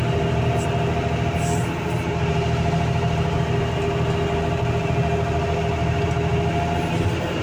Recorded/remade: recorded